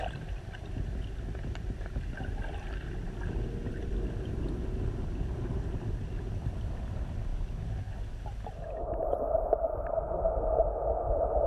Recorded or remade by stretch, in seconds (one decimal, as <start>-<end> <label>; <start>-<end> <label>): 0.0-11.5 recorded